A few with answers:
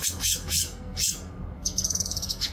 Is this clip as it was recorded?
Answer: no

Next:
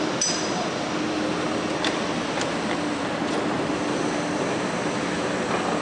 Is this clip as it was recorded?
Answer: yes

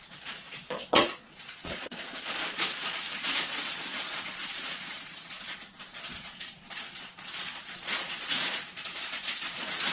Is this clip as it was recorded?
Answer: no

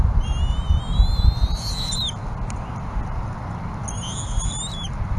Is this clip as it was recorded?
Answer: yes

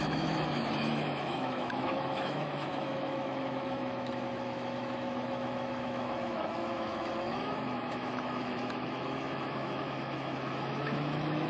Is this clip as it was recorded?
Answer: no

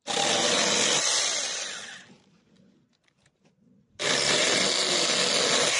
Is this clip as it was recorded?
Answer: yes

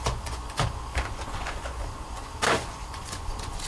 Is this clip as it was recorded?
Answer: no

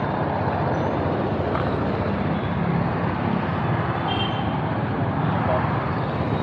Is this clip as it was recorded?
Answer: yes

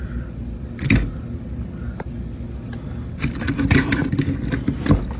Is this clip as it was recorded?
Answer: yes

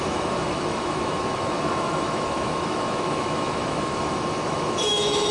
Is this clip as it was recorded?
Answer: no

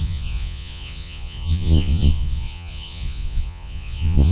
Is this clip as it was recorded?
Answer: no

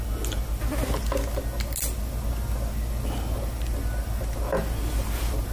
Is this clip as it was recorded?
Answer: yes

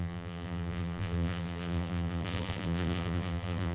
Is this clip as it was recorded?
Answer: no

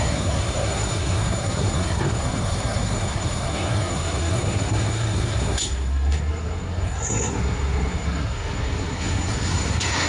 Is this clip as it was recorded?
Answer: no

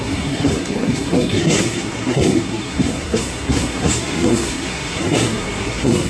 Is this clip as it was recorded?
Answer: no